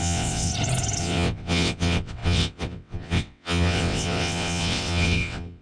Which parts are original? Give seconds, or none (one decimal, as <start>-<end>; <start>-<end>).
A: 0.5-1.0